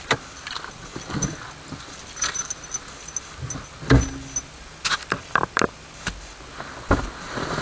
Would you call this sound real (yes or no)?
yes